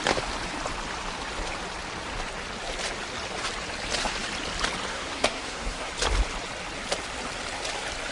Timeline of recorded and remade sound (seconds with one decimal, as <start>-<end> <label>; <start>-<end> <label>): 0.0-4.9 recorded; 4.9-5.9 remade; 5.9-8.1 recorded